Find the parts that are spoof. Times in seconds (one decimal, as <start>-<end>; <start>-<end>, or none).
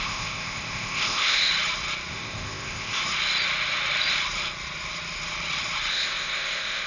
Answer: 0.0-1.5; 2.1-3.0; 5.9-6.9